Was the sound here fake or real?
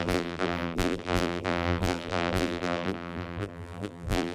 fake